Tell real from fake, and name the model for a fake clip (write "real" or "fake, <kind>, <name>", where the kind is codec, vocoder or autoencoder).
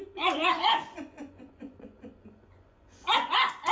fake, vocoder, Vocos